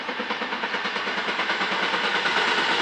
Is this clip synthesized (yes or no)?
no